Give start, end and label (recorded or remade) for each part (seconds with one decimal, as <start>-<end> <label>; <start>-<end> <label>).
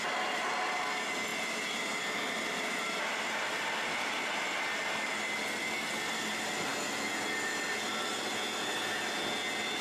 0.0-9.8 recorded